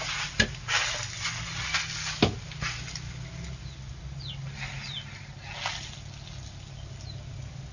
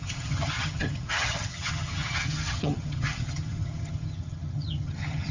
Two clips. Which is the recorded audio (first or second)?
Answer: first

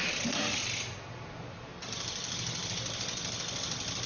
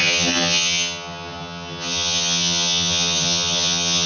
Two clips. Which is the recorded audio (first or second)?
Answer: first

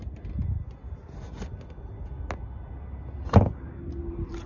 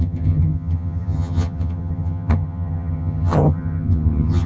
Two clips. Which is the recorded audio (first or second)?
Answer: first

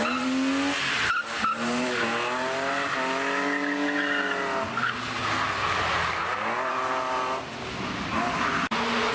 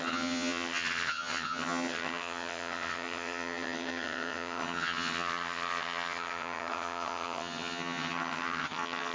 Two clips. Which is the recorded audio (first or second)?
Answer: first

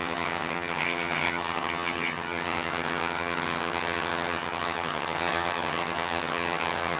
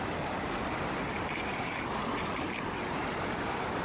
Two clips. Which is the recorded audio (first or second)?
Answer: second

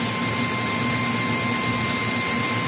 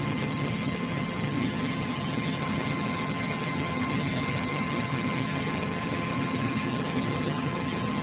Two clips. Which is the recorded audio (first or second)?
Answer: first